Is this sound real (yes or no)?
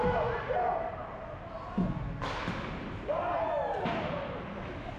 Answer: yes